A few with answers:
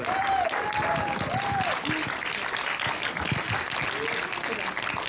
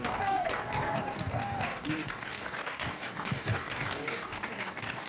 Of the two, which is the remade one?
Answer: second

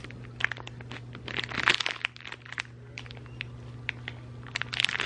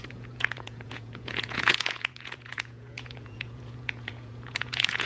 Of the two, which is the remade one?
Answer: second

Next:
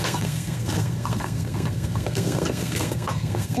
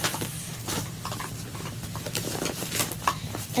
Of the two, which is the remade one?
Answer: first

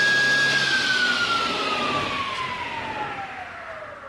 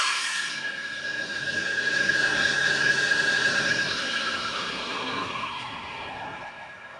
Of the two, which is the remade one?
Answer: second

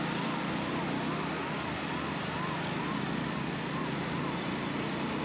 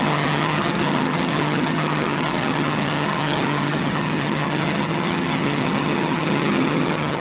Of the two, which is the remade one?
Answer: second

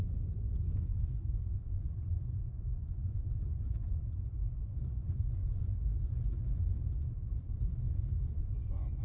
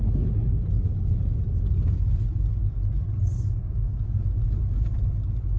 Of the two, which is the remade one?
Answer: first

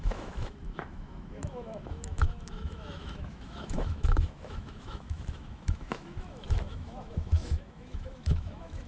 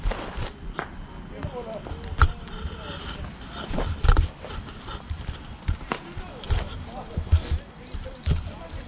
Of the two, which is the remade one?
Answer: first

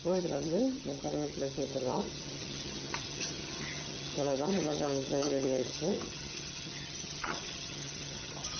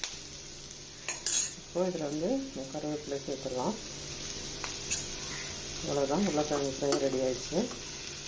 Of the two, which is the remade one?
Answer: first